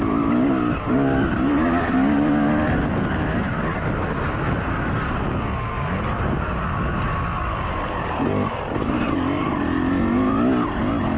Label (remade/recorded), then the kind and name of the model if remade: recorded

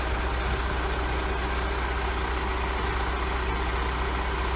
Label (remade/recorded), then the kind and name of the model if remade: recorded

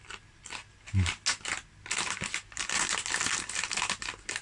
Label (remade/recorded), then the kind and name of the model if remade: recorded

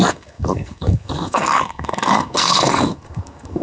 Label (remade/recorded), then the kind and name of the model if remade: remade, codec, SNAC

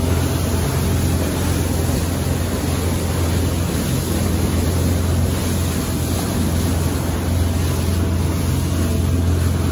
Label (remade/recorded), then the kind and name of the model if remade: recorded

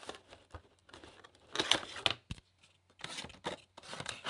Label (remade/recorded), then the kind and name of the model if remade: recorded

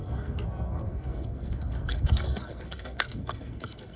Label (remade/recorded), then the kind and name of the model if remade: remade, codec, SNAC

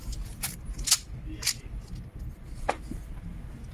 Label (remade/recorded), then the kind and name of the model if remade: recorded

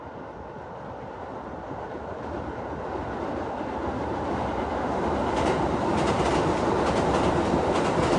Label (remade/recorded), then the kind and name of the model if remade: recorded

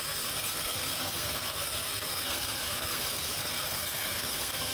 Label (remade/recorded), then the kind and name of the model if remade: remade, codec, SNAC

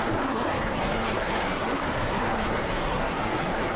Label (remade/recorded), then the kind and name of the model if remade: remade, codec, SNAC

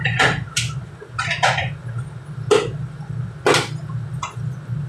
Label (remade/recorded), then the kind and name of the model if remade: recorded